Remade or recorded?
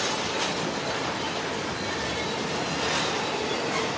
remade